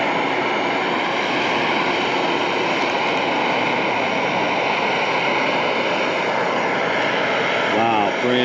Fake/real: real